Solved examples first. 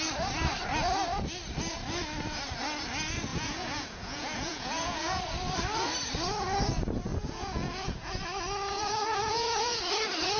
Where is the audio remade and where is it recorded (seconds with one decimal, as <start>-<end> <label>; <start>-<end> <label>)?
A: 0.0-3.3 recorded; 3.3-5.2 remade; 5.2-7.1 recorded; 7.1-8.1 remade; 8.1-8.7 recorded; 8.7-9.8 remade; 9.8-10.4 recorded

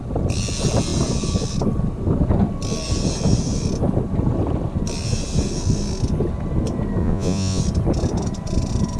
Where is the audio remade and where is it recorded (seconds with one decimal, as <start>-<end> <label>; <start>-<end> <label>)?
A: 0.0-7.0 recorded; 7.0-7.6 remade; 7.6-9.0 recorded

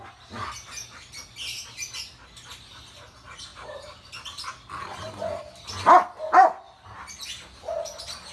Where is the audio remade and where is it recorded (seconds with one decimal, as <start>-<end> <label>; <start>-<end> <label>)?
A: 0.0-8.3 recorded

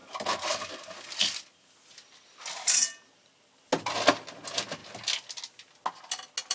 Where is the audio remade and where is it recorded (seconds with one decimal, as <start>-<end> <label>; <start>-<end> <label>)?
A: 0.0-6.5 recorded